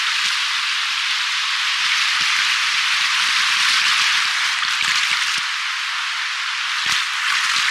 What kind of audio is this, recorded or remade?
recorded